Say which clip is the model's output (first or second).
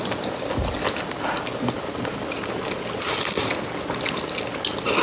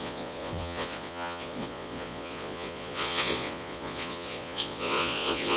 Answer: second